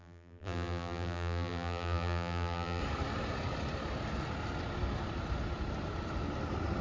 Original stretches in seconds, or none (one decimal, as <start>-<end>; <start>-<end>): 2.8-6.8